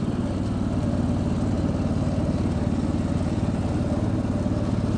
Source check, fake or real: real